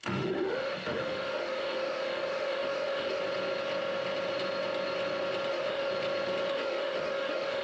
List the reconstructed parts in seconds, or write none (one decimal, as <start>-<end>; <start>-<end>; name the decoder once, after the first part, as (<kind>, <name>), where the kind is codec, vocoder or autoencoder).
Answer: 0.0-3.2 (autoencoder, DAC-VAE); 5.5-5.9; 6.5-7.6